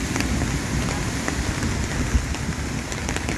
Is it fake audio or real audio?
real